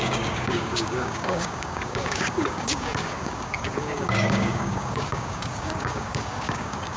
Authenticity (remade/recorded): remade